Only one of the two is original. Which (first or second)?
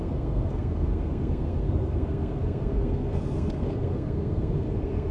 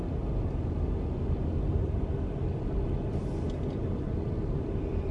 second